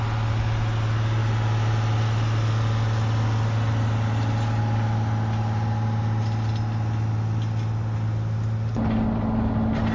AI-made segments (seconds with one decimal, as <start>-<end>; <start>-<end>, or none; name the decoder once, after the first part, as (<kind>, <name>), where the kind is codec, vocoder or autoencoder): none